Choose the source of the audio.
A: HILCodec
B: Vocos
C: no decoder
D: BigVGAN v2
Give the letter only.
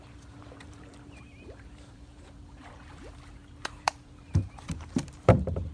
D